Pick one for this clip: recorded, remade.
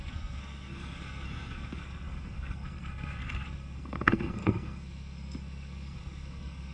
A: remade